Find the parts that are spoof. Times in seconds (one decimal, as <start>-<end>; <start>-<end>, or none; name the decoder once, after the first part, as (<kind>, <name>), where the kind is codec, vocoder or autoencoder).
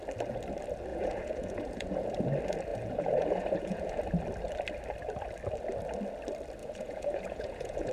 0.9-2.2 (vocoder, Vocos); 2.7-4.0; 6.6-7.9